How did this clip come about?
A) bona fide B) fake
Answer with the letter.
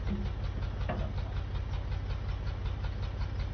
A